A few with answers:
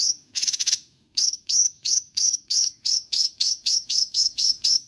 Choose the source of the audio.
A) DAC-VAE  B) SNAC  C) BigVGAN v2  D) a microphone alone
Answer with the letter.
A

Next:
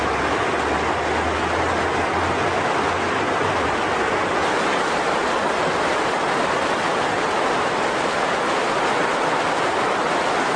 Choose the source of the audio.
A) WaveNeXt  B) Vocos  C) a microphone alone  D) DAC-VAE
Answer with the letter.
C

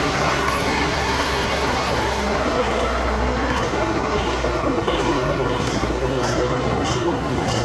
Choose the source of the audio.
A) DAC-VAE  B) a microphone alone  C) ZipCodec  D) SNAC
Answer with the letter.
D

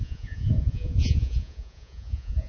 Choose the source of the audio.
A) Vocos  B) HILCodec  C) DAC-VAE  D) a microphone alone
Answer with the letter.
A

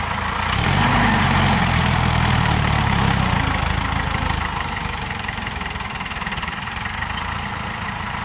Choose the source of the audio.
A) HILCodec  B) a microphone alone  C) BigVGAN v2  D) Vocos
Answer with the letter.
C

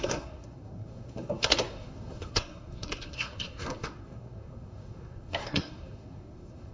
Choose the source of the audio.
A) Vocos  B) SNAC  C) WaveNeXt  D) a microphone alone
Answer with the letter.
B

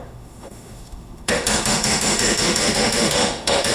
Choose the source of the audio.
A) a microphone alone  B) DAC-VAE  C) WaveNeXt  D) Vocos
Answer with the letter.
B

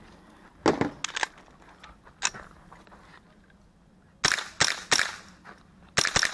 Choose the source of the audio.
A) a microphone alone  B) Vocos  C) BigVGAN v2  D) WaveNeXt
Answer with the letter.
A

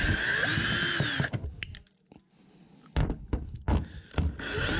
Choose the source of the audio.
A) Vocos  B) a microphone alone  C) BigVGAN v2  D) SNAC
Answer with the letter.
B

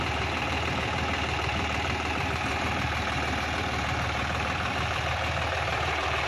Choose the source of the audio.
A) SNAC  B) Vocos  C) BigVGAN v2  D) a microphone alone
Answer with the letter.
C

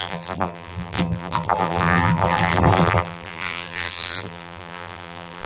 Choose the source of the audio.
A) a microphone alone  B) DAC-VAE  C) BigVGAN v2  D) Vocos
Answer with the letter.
C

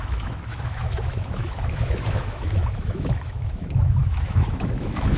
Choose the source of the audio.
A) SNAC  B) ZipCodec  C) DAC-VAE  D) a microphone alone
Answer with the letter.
C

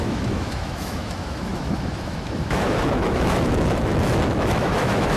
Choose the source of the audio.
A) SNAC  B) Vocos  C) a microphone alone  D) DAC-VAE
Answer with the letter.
D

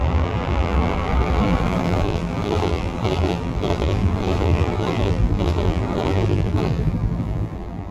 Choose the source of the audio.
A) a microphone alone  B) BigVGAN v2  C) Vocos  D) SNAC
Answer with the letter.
B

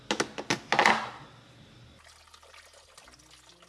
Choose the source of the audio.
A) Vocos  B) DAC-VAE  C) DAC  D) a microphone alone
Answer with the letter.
D